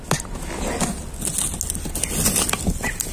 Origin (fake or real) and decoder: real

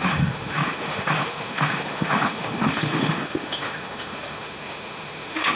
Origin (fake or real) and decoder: fake, autoencoder, DAC-VAE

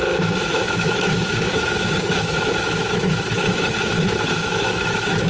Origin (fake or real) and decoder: fake, autoencoder, DAC-VAE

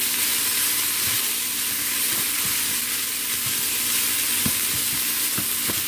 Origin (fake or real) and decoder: real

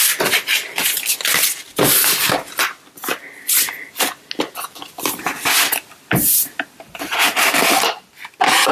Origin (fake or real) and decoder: real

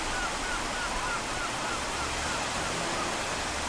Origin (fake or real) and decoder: real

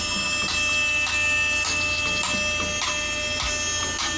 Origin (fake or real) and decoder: real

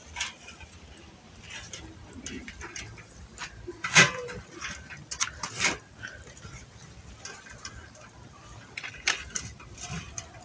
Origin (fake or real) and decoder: real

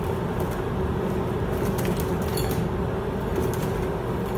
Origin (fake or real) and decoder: real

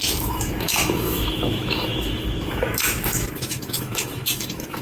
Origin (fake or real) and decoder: fake, autoencoder, DAC-VAE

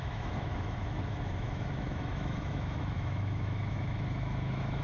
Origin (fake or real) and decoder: fake, autoencoder, DAC-VAE